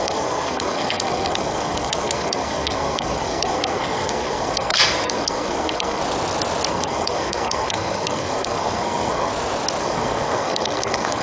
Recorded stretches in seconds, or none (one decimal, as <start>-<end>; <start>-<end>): 6.0-6.7; 9.3-9.8